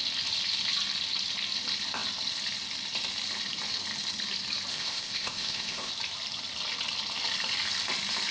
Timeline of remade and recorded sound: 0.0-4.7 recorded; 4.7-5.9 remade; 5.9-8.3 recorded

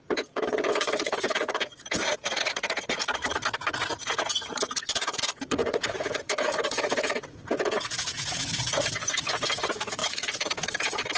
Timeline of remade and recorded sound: 0.0-3.0 remade; 3.0-3.8 recorded; 3.8-11.2 remade

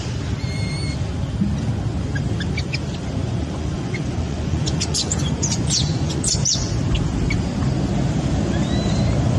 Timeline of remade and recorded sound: 0.0-3.2 recorded; 3.2-6.8 remade; 6.8-9.4 recorded

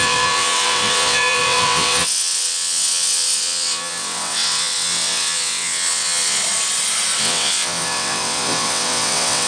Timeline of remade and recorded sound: 0.0-6.4 remade; 6.4-7.2 recorded; 7.2-9.5 remade

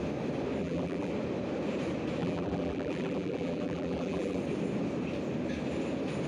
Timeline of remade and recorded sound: 0.0-0.6 recorded; 0.6-1.1 remade; 1.1-2.2 recorded; 2.2-4.4 remade; 4.4-6.3 recorded

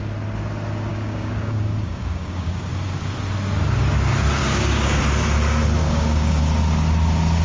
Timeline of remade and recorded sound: 0.0-0.9 recorded; 0.9-2.7 remade; 2.7-4.4 recorded; 4.4-5.0 remade; 5.0-5.8 recorded; 5.8-6.4 remade; 6.4-7.4 recorded

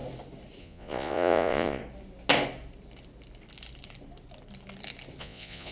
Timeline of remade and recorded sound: 0.0-0.6 recorded; 0.6-1.8 remade; 1.8-5.2 recorded; 5.2-5.7 remade